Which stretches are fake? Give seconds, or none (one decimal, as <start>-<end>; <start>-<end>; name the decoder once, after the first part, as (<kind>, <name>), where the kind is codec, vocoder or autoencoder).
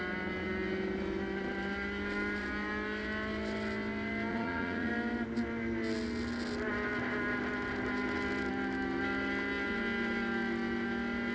4.3-4.9 (vocoder, Vocos)